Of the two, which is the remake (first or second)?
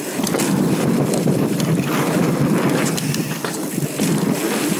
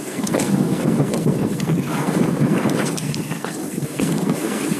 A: second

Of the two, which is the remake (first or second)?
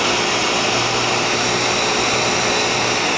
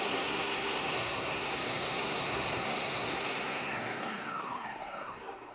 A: second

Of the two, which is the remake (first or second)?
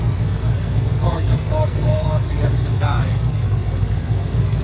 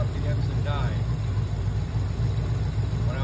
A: first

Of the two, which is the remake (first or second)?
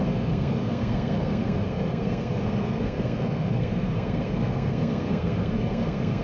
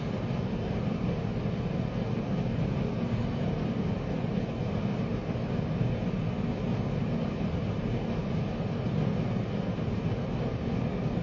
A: first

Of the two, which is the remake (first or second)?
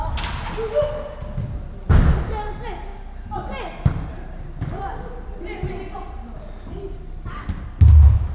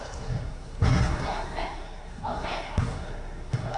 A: second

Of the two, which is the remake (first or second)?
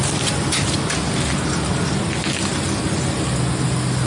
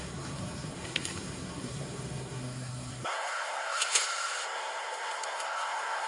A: second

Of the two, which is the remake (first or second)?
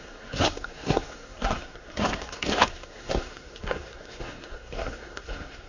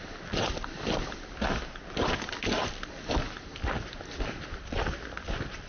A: first